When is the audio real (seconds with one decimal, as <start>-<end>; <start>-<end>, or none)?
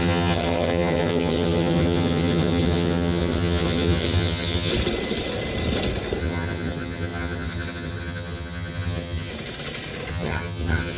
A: 4.7-6.2; 9.3-10.1